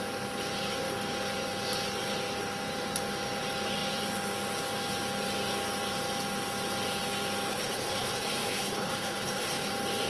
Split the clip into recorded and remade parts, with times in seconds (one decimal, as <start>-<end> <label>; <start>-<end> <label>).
0.0-7.5 recorded; 7.5-9.7 remade; 9.7-10.1 recorded